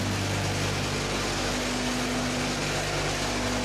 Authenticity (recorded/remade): recorded